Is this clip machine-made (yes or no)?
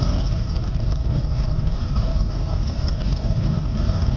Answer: yes